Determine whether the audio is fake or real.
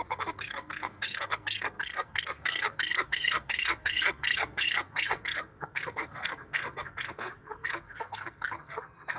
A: fake